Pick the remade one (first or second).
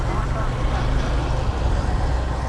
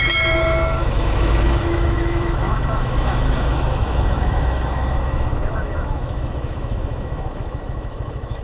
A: second